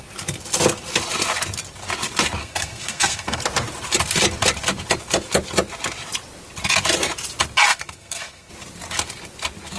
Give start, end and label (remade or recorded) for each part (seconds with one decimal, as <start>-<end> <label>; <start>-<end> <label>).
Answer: 0.0-2.4 recorded; 2.4-3.4 remade; 3.4-7.7 recorded; 7.7-8.5 remade; 8.5-9.8 recorded